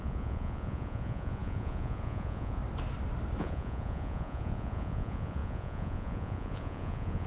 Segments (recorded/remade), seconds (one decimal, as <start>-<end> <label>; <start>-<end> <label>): 0.0-2.6 remade; 2.6-3.4 recorded; 3.4-7.3 remade